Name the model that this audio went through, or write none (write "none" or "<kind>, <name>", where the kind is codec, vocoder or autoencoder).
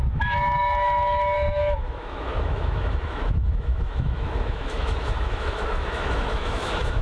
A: autoencoder, DAC-VAE